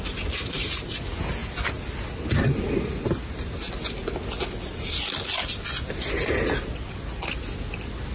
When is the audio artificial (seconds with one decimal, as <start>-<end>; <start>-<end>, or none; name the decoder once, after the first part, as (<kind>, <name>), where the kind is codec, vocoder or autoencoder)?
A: none